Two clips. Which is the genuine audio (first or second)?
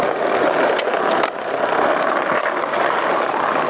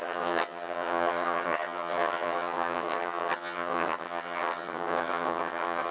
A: first